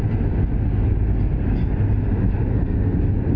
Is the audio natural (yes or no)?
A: yes